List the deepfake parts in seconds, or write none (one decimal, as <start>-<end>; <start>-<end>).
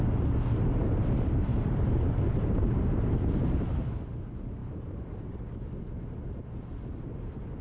1.5-4.0; 4.6-5.4